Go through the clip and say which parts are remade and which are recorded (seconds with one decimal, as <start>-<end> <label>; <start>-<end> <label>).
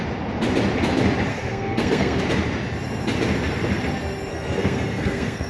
0.0-1.3 recorded; 1.3-2.2 remade; 2.2-4.3 recorded; 4.3-5.5 remade